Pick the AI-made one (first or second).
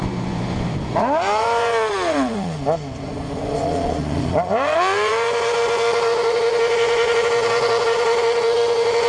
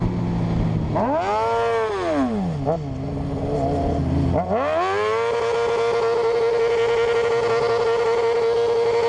first